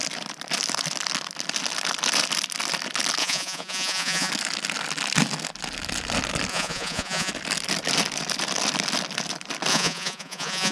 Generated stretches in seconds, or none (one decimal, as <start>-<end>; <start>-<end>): 3.2-4.3; 6.5-7.3; 9.7-10.7